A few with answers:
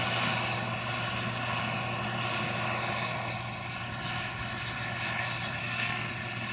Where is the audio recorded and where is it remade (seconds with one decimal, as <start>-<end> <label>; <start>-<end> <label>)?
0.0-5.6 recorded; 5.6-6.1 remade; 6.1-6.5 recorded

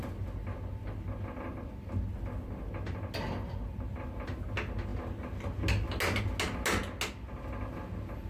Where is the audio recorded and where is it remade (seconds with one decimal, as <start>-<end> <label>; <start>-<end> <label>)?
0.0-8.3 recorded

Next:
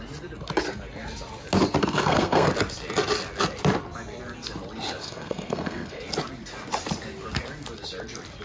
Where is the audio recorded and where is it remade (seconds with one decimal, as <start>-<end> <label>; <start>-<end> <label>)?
0.0-1.8 recorded; 1.8-2.5 remade; 2.5-5.0 recorded; 5.0-6.0 remade; 6.0-8.4 recorded

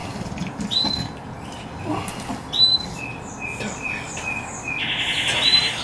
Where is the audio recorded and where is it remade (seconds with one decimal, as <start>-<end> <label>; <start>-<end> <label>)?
0.0-5.8 recorded

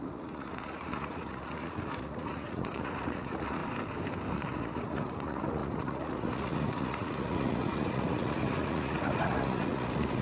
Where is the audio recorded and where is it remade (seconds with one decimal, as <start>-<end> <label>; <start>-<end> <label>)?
0.0-3.6 remade; 3.6-4.3 recorded; 4.3-10.2 remade

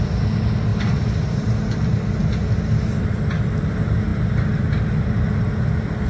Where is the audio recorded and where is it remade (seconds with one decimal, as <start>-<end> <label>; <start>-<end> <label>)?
0.0-6.1 recorded